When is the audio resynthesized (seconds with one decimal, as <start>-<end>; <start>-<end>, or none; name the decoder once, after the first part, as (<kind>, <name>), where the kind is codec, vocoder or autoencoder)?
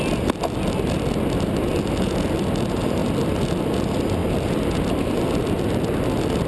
none